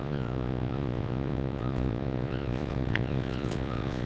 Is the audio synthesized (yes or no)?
yes